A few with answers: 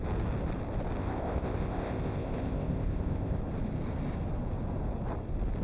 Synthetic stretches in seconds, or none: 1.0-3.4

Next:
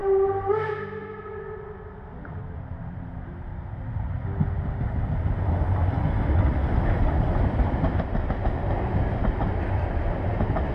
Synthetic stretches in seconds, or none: 0.0-0.7; 2.4-4.1